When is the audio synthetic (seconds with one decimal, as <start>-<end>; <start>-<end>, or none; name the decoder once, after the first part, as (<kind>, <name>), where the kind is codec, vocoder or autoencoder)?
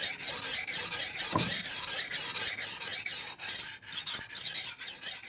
0.5-2.0 (vocoder, BigVGAN v2)